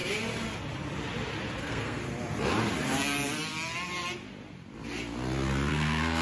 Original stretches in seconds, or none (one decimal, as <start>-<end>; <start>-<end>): 0.0-1.6; 2.0-5.7